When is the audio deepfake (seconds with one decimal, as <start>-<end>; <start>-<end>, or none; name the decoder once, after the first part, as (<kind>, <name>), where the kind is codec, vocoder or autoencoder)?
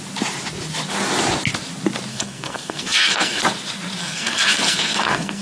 2.1-3.4 (codec, SNAC); 4.0-5.4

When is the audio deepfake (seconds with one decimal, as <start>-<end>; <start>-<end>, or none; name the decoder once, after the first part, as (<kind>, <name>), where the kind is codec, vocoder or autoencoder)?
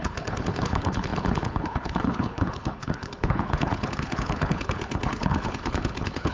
0.0-6.3 (codec, HILCodec)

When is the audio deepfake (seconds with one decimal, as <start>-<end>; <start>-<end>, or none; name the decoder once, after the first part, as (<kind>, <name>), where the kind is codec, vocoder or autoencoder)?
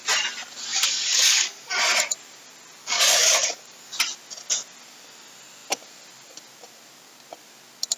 0.7-1.8 (codec, DAC); 2.8-4.0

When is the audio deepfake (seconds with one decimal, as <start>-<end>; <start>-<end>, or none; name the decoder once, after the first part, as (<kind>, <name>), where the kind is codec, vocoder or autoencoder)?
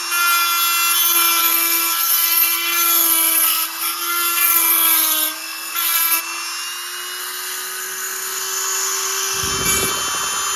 1.4-6.2 (codec, SNAC); 7.2-9.5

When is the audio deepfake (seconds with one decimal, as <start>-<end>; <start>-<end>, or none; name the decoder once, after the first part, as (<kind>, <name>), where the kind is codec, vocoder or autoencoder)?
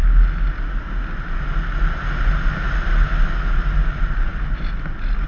none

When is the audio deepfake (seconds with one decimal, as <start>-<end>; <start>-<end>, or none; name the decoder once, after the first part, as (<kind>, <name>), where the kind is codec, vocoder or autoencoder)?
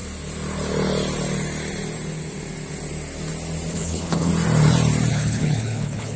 3.7-4.3 (codec, HILCodec); 5.1-6.2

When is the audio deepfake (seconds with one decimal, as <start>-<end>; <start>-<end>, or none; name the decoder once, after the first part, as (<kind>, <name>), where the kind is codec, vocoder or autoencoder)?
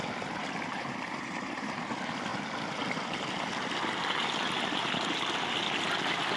0.4-1.8 (vocoder, BigVGAN v2)